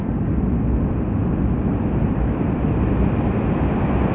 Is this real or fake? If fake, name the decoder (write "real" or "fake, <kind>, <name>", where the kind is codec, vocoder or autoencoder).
real